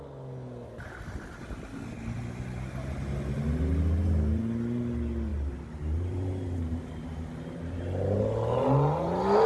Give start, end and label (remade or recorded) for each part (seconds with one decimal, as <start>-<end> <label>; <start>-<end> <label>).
0.0-5.3 recorded; 5.3-8.2 remade; 8.2-9.5 recorded